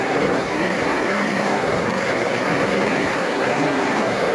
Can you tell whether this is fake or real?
fake